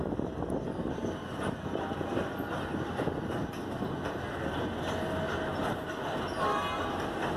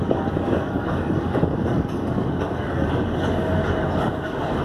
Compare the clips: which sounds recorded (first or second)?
first